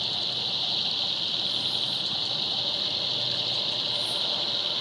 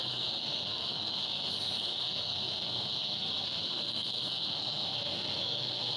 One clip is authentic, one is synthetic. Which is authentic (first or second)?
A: first